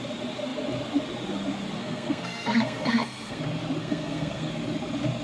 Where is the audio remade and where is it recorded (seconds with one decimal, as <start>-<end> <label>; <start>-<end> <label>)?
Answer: 0.0-1.8 recorded; 1.8-3.4 remade; 3.4-3.8 recorded; 3.8-4.5 remade; 4.5-5.2 recorded